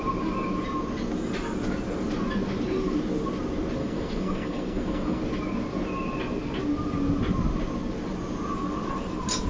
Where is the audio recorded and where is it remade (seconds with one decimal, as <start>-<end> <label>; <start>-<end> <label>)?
0.0-3.8 recorded; 3.8-5.2 remade; 5.2-9.5 recorded